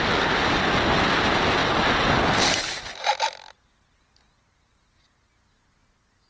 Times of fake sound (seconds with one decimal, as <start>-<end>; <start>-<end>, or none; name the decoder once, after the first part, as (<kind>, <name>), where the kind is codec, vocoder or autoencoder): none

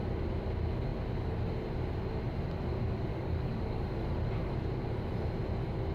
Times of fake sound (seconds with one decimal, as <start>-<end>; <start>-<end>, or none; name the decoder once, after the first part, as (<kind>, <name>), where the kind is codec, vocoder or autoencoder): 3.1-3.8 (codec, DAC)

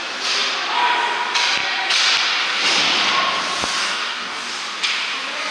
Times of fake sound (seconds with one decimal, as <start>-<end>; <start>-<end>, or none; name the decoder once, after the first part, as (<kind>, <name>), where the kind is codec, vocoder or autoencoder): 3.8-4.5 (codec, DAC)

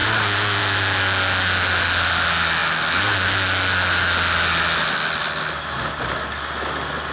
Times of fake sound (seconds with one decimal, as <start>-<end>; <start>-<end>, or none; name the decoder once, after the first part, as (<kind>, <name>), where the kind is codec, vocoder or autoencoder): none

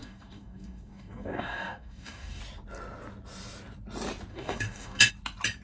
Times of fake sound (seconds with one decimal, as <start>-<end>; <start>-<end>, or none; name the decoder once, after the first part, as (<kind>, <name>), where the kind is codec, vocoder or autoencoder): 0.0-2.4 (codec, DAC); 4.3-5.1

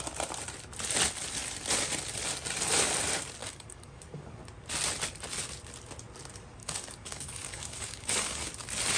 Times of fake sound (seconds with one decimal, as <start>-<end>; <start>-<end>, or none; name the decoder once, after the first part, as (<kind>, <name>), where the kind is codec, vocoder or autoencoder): 3.4-4.4 (codec, DAC); 6.6-8.5

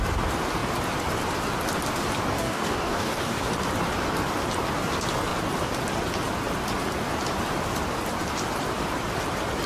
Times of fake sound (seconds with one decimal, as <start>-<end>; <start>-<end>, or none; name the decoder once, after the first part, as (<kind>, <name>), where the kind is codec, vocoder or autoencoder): 2.3-3.5 (codec, DAC)

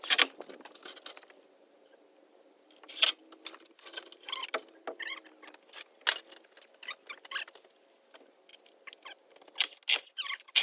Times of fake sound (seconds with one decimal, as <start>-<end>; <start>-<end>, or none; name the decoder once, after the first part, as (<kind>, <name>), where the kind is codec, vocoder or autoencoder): none